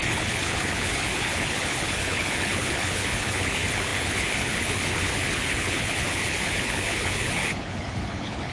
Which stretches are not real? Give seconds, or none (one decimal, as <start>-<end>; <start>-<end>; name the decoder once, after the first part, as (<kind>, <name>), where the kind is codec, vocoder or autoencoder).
0.0-8.5 (codec, HILCodec)